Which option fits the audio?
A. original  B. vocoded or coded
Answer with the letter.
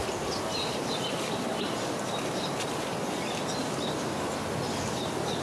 A